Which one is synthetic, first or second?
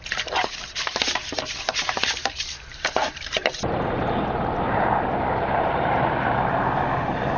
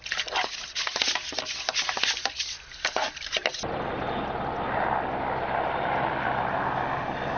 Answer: first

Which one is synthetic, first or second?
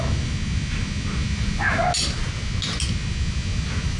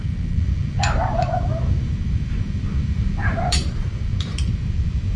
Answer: second